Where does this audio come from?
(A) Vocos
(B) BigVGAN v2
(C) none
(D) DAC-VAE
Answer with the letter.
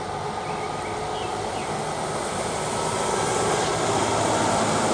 C